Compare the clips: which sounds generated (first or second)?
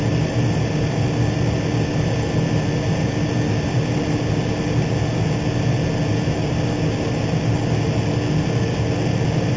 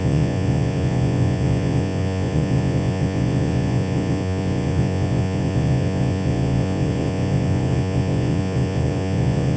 second